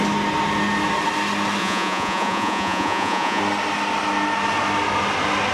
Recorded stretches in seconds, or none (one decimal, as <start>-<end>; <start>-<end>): 0.0-1.6; 3.4-5.5